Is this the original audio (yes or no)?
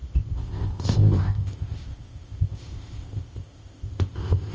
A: no